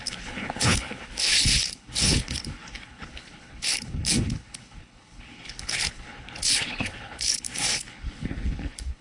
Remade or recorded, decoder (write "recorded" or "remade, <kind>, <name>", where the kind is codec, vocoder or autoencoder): remade, codec, HILCodec